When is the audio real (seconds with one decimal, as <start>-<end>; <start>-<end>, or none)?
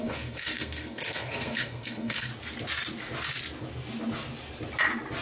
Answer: 2.3-5.2